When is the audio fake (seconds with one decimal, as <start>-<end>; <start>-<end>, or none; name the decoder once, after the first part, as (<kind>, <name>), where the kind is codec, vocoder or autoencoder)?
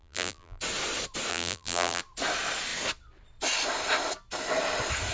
0.0-0.6 (vocoder, BigVGAN v2); 1.3-2.0